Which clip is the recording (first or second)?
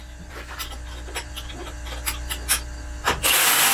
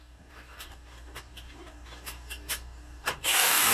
first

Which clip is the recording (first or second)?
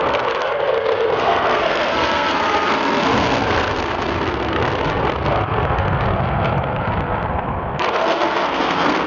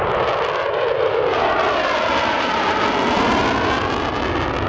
second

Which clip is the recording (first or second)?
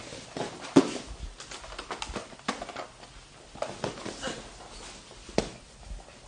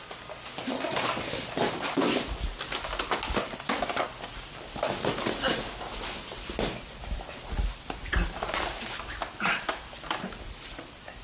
first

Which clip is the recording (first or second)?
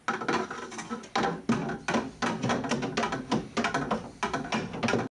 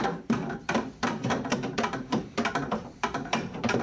first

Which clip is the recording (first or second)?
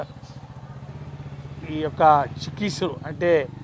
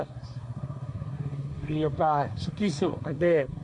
first